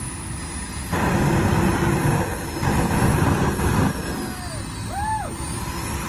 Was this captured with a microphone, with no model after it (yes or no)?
yes